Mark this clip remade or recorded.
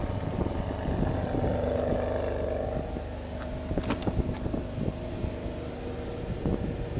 recorded